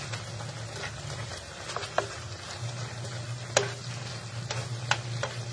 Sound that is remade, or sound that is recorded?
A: recorded